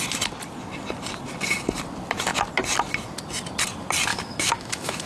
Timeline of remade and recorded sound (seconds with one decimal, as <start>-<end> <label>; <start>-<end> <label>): 0.0-4.1 recorded; 4.1-5.1 remade